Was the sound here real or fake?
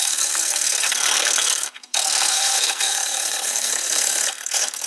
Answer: fake